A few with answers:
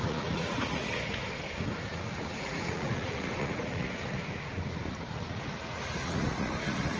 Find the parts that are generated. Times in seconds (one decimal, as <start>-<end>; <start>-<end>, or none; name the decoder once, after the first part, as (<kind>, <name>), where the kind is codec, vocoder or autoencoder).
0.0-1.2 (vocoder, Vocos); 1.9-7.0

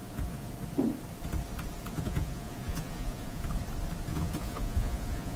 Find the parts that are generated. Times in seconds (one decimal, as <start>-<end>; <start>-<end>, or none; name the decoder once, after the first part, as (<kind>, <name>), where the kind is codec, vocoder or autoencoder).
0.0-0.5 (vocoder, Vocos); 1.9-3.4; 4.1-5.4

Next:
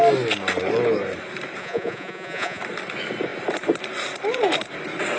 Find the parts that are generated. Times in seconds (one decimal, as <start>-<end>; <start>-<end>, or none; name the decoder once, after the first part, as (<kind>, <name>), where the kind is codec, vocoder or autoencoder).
1.6-2.6 (vocoder, Vocos)